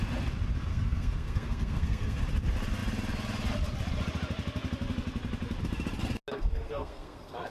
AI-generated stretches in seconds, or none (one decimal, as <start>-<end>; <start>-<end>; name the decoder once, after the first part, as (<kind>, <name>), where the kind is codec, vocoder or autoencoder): 0.7-2.2 (codec, SNAC); 6.3-7.5